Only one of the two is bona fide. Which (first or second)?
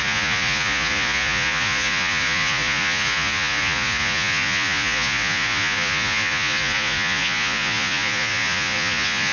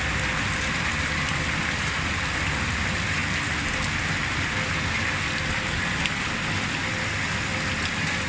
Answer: second